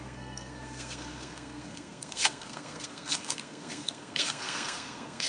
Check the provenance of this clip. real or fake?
fake